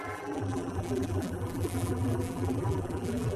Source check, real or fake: fake